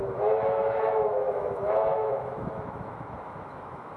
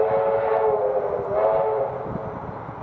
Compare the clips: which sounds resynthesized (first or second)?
first